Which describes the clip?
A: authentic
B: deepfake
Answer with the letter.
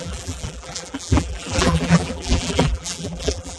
B